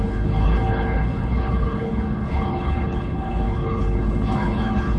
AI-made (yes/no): yes